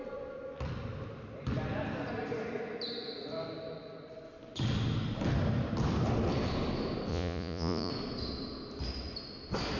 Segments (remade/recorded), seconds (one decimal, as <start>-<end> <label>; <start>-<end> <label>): 0.0-7.1 recorded; 7.1-7.9 remade; 7.9-9.8 recorded